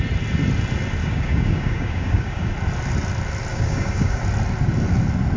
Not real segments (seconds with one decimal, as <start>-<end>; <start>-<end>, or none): 1.0-2.5; 3.5-4.2